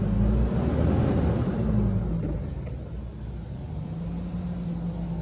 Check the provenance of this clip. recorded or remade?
recorded